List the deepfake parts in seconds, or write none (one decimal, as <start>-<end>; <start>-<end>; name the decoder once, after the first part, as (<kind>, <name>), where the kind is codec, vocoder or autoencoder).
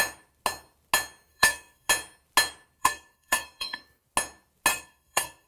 1.3-1.9 (codec, SNAC); 2.8-3.8; 4.7-5.5